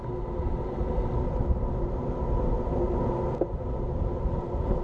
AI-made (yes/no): no